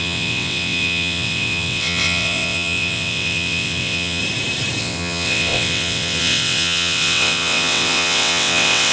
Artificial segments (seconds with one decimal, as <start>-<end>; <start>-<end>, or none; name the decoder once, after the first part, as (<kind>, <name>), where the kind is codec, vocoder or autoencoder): 0.0-4.2 (vocoder, WaveNeXt); 4.8-8.9